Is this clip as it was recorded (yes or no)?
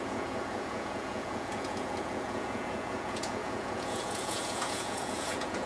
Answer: no